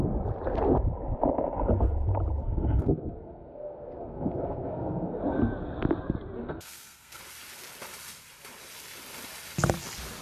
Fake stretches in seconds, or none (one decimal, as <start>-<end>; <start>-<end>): 2.4-5.2; 6.4-7.2